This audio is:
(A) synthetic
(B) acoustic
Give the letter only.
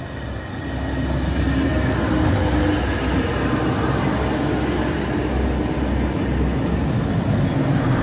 B